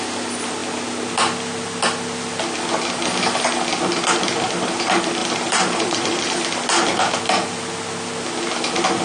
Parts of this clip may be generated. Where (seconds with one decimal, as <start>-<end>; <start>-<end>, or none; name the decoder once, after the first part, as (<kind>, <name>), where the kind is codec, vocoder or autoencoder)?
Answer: 5.2-6.5 (vocoder, BigVGAN v2)